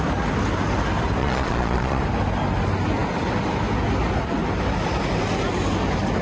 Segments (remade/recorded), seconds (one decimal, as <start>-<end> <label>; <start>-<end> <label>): 0.0-1.2 recorded; 1.2-2.0 remade; 2.0-6.2 recorded